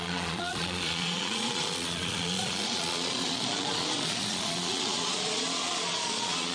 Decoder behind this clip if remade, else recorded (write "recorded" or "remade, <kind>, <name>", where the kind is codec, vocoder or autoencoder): remade, vocoder, Vocos